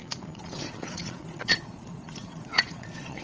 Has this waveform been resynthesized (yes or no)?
yes